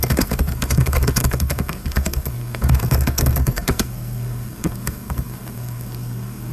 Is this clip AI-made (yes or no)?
yes